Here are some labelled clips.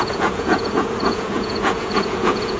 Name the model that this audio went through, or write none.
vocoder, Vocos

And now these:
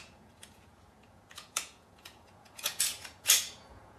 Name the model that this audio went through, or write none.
vocoder, Vocos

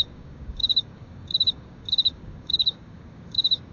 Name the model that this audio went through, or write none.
codec, DAC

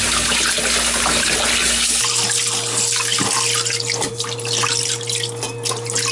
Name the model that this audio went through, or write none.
none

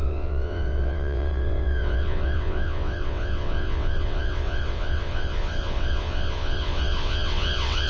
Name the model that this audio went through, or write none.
vocoder, WaveNeXt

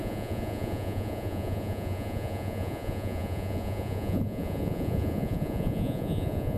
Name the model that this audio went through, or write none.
vocoder, Vocos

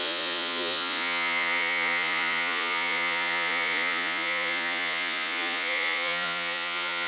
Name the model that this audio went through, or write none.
vocoder, Vocos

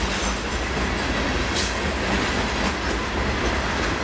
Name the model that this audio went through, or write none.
none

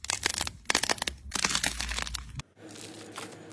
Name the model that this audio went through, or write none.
none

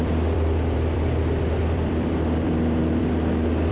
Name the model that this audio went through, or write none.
vocoder, BigVGAN v2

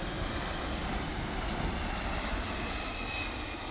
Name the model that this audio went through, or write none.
none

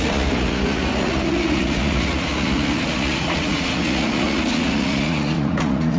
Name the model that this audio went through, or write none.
vocoder, Vocos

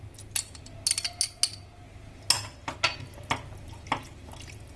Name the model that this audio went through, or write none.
none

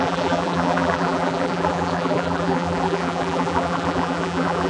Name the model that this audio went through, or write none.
vocoder, BigVGAN v2